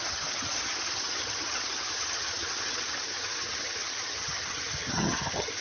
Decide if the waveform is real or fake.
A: fake